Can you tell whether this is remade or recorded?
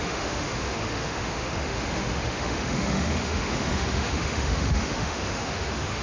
remade